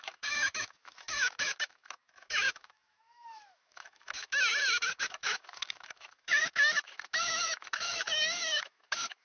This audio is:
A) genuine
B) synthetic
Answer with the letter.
B